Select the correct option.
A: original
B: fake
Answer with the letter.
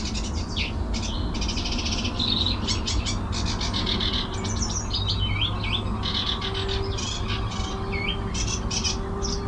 A